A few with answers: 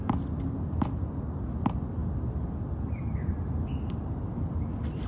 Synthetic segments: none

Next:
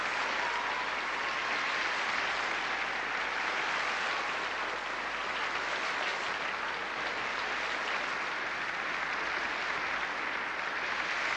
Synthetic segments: 6.1-7.6 (vocoder, BigVGAN v2)

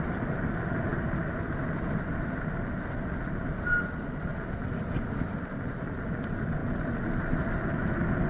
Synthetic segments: none